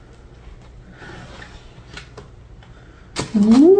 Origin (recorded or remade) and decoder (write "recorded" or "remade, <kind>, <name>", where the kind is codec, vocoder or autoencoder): recorded